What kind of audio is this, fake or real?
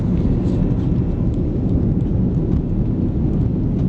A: real